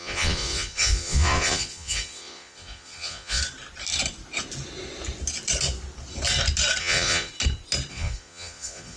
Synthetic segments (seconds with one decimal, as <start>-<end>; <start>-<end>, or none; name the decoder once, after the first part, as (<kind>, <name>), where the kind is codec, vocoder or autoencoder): 0.0-3.4 (vocoder, Vocos); 6.8-7.3; 7.9-9.0